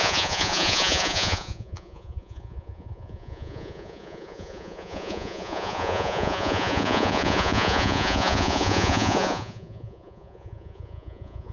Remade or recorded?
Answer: remade